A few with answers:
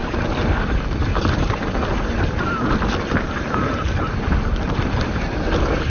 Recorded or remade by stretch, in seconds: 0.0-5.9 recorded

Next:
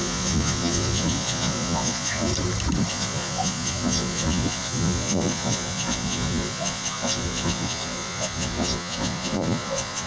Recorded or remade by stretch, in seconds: 0.0-2.3 remade; 2.3-2.9 recorded; 2.9-10.1 remade

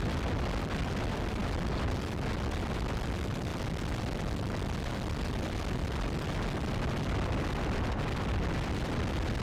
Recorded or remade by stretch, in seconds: 0.0-9.4 recorded

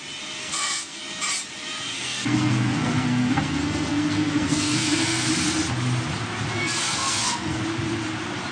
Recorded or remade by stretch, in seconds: 0.0-0.4 recorded; 0.4-1.0 remade; 1.0-1.9 recorded; 1.9-5.3 remade; 5.3-6.6 recorded; 6.6-7.6 remade; 7.6-8.5 recorded

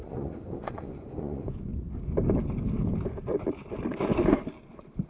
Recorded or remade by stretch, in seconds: 0.0-1.7 remade; 1.7-5.1 recorded